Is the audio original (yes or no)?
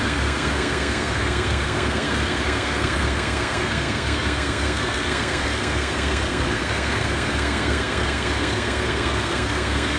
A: no